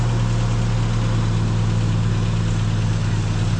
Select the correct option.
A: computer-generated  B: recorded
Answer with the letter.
B